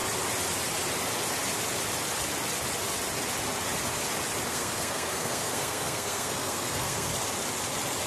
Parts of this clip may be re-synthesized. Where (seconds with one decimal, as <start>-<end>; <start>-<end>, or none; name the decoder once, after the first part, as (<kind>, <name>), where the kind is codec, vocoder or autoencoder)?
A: 4.5-7.1 (codec, SNAC)